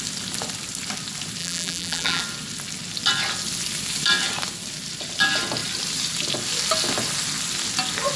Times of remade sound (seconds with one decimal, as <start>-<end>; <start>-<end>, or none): 1.4-2.2